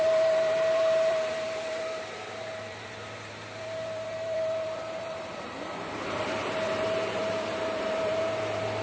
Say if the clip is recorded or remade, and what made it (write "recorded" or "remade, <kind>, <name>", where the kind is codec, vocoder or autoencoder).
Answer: remade, vocoder, BigVGAN v2